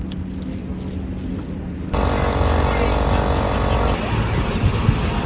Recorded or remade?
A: recorded